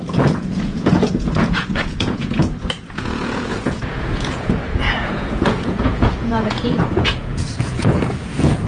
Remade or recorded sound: remade